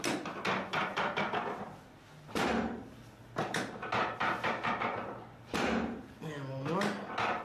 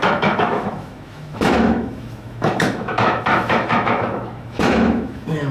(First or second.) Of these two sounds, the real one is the first